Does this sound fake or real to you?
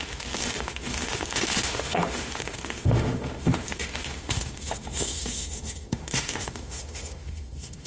fake